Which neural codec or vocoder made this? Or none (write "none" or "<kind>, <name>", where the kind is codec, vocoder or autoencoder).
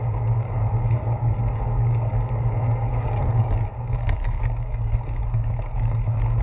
codec, DAC